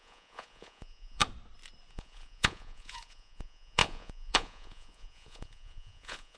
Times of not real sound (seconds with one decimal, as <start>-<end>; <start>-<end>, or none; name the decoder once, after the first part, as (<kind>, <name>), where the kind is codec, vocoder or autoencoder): 0.0-1.2 (vocoder, Vocos); 1.9-6.4

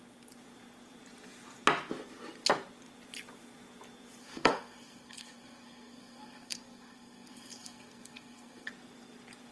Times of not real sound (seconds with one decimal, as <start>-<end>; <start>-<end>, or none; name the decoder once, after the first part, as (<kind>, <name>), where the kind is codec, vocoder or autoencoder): 4.2-8.7 (codec, SNAC)